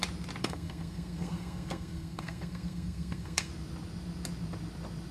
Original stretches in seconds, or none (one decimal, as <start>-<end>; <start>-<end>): 0.0-0.4; 3.5-5.1